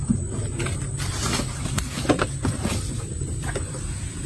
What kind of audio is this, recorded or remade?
remade